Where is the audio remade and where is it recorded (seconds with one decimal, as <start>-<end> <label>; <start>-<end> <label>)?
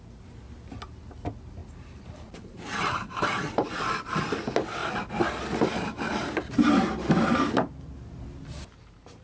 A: 0.0-1.6 recorded; 1.6-3.7 remade; 3.7-9.2 recorded